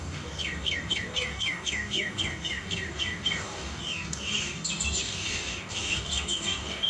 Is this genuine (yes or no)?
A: no